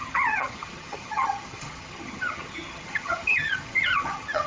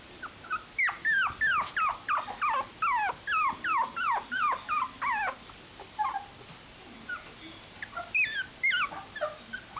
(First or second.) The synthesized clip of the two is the first